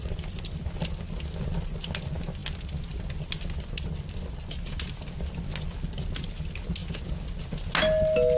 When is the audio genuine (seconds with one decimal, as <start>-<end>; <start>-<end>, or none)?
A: 0.0-8.4